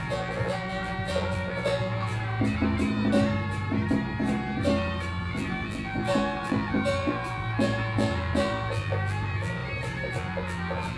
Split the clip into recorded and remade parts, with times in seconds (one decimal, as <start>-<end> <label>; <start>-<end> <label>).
0.0-2.1 remade; 2.1-5.2 recorded; 5.2-9.6 remade; 9.6-10.1 recorded; 10.1-11.0 remade